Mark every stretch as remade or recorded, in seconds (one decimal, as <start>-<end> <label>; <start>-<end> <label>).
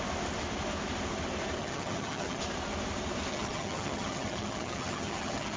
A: 0.0-1.6 recorded; 1.6-2.4 remade; 2.4-3.3 recorded; 3.3-5.6 remade